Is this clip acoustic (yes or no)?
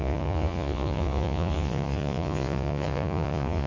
no